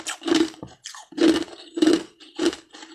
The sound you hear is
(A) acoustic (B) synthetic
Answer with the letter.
B